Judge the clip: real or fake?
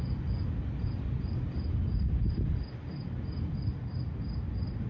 real